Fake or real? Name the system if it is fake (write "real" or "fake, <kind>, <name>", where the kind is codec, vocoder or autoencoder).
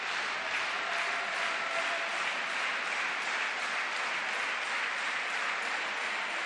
real